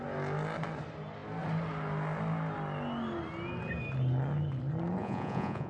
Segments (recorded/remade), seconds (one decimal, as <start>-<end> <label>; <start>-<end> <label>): 0.0-5.0 recorded; 5.0-5.7 remade

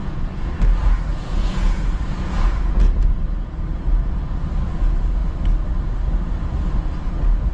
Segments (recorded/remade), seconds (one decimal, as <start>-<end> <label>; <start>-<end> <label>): 0.0-0.5 remade; 0.5-1.1 recorded; 1.1-2.8 remade; 2.8-7.5 recorded

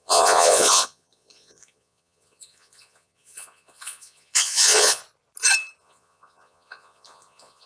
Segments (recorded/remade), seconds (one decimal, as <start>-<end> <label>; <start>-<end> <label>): 0.0-5.0 remade; 5.0-5.8 recorded; 5.8-7.7 remade

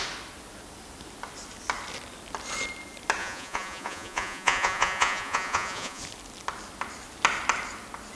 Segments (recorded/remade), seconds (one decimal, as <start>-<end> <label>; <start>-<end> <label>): 0.0-3.2 recorded; 3.2-6.0 remade; 6.0-8.2 recorded

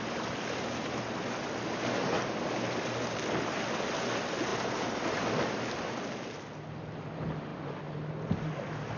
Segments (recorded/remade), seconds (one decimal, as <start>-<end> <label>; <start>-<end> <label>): 0.0-9.0 recorded